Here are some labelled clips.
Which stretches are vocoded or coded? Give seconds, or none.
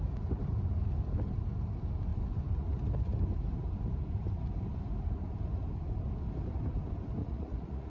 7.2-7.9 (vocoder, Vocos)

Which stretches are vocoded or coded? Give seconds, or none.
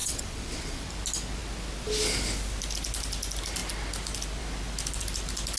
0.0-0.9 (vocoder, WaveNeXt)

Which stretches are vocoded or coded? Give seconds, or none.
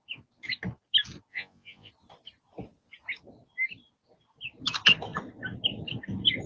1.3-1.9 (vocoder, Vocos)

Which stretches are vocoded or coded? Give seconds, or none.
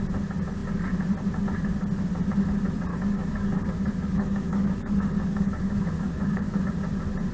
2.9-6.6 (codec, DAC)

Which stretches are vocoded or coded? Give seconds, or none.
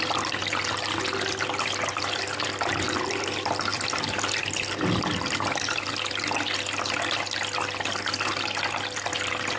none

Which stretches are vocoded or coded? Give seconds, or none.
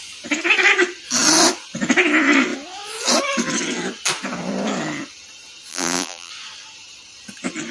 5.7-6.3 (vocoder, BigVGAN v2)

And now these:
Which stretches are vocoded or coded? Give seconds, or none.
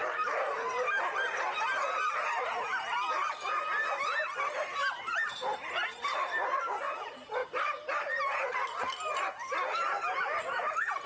none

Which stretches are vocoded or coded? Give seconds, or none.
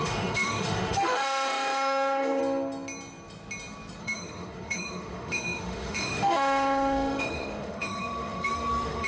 0.0-2.4 (autoencoder, DAC-VAE); 4.0-9.1